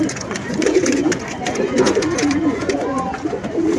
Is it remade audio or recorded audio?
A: remade